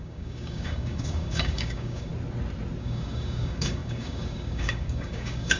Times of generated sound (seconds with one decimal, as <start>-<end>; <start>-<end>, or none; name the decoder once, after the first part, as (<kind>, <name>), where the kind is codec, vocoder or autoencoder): 0.0-2.1 (codec, DAC); 2.8-5.6